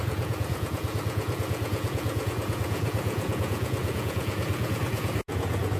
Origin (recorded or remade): remade